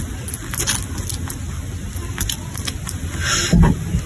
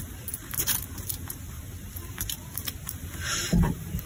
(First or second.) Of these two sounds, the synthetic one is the second